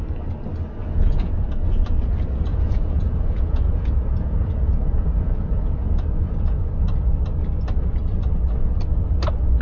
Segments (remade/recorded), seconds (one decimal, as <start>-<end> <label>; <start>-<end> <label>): 0.0-0.8 recorded; 0.8-1.3 remade; 1.3-2.5 recorded; 2.5-7.1 remade; 7.1-9.6 recorded